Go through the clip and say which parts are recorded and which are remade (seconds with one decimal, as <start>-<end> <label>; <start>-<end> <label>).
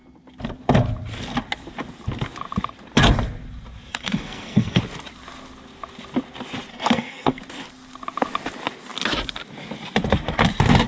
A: 0.0-3.9 recorded; 3.9-4.8 remade; 4.8-6.7 recorded; 6.7-7.4 remade; 7.4-10.9 recorded